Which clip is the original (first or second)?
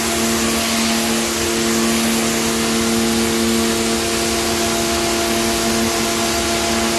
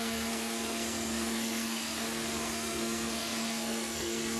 first